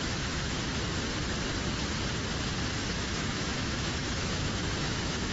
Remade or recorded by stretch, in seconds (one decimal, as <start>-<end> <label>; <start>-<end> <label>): 0.0-0.7 remade; 0.7-2.9 recorded; 2.9-5.3 remade